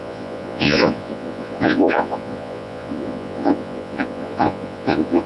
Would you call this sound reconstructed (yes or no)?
yes